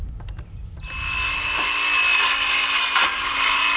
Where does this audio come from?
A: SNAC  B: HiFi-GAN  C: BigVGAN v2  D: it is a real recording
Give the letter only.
D